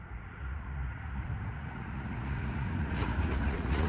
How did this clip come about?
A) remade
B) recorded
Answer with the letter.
A